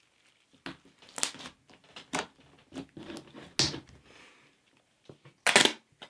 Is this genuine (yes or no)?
yes